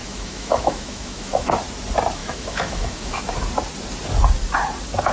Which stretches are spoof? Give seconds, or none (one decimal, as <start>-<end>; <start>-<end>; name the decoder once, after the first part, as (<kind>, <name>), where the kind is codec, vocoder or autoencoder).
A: 0.0-1.5 (autoencoder, DAC-VAE); 2.2-3.2